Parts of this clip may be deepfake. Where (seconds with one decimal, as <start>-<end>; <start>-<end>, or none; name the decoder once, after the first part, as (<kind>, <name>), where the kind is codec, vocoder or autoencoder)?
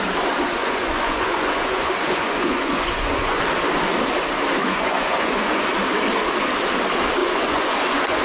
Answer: 0.6-3.4 (vocoder, Vocos); 4.6-5.6; 7.2-8.2